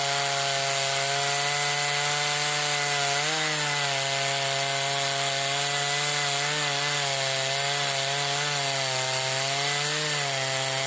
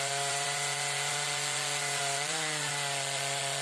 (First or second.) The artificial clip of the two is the second